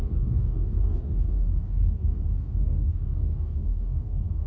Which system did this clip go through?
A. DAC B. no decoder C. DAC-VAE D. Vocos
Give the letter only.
A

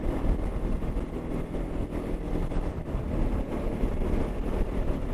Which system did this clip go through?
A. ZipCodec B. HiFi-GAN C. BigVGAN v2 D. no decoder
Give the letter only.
D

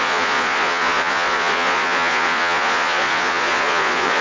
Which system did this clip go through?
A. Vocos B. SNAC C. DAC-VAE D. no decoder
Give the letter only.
A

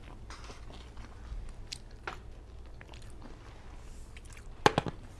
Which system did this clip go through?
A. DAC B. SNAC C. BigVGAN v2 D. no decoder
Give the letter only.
D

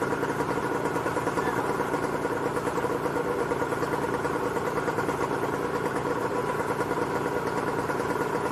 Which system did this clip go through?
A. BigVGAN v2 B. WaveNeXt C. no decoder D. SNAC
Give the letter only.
A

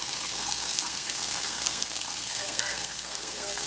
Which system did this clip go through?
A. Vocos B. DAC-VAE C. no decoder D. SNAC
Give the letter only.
D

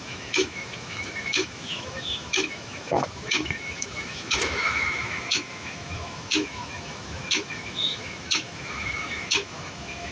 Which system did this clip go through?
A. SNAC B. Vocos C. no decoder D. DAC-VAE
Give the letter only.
D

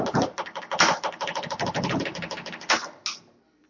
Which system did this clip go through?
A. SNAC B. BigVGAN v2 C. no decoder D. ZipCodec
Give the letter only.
C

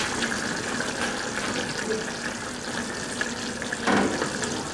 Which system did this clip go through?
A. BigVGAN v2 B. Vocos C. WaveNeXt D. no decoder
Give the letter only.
D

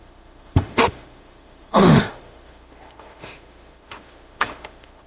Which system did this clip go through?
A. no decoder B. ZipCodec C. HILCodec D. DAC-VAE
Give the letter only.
D